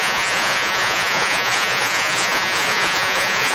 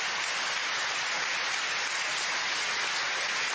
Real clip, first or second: second